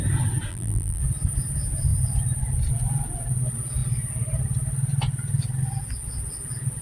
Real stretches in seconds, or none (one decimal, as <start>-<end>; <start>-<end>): 0.0-0.5; 1.0-6.8

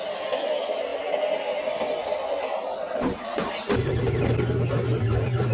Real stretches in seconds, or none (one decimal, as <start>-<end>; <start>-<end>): 0.0-0.9; 4.2-5.5